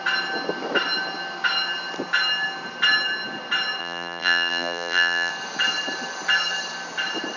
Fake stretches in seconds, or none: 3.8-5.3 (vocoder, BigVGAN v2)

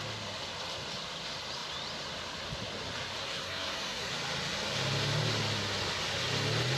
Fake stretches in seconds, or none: 3.2-4.1 (codec, SNAC)

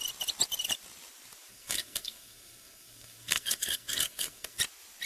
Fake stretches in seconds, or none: 1.5-4.6 (codec, SNAC)

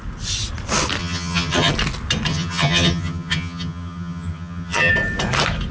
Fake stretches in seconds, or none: 1.0-1.7 (vocoder, HiFi-GAN); 2.3-4.9